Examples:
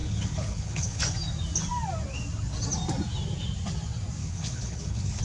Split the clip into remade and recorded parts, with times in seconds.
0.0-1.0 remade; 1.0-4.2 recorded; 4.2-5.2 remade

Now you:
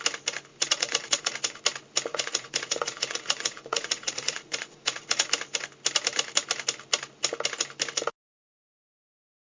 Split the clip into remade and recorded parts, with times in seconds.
0.0-0.5 recorded; 0.5-1.6 remade; 1.6-2.1 recorded; 2.1-5.3 remade; 5.3-9.4 recorded

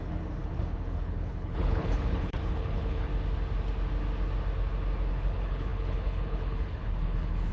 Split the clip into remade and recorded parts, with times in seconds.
0.0-3.1 remade; 3.1-5.1 recorded; 5.1-7.5 remade

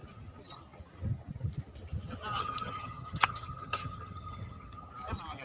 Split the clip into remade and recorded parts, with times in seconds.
0.0-2.3 recorded; 2.3-4.9 remade; 4.9-5.4 recorded

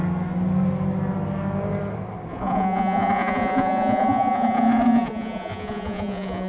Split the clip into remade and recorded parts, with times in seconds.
0.0-2.3 recorded; 2.3-6.5 remade

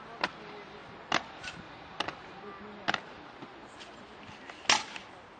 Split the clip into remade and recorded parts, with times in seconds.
0.0-5.4 recorded

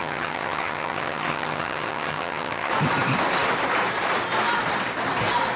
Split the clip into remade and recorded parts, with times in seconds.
0.0-2.7 remade; 2.7-5.6 recorded